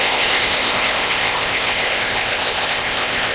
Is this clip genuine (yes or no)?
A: no